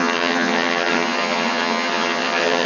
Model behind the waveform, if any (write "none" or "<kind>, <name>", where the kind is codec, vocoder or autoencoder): vocoder, HiFi-GAN